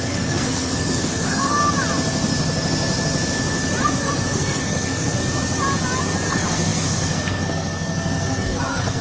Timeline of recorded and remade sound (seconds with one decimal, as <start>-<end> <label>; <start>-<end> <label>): 0.0-1.6 remade; 1.6-3.9 recorded; 3.9-5.2 remade; 5.2-6.3 recorded; 6.3-9.0 remade